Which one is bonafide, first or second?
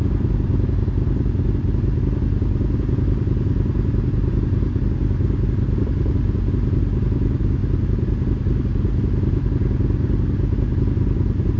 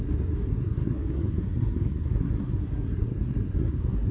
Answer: first